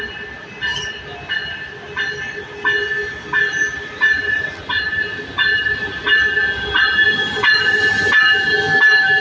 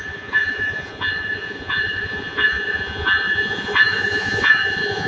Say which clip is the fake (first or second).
second